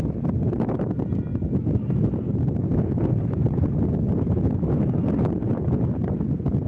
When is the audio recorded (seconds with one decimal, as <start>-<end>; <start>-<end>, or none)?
0.0-6.7